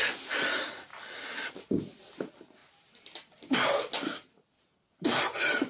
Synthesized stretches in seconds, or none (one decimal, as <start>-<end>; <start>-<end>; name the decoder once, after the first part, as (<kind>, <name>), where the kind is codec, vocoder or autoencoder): none

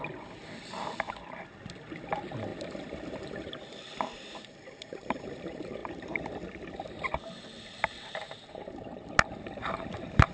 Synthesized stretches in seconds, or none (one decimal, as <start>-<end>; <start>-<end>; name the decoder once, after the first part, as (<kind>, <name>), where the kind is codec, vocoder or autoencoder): 2.5-5.2 (vocoder, BigVGAN v2)